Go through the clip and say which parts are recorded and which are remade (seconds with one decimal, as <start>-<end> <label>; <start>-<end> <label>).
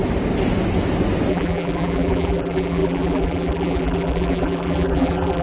0.0-1.3 recorded; 1.3-5.4 remade